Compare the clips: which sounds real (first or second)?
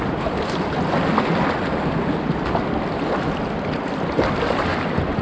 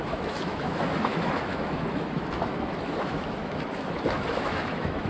first